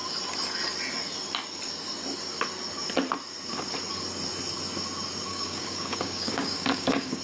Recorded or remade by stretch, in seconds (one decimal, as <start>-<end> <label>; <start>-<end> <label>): 0.0-5.3 recorded; 5.3-7.2 remade